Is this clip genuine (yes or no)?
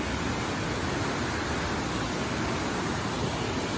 yes